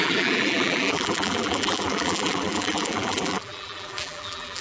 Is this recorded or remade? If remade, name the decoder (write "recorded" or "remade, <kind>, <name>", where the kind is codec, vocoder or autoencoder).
remade, vocoder, BigVGAN v2